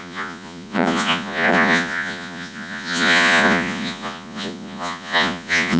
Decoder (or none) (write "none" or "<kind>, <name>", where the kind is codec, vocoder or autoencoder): vocoder, Vocos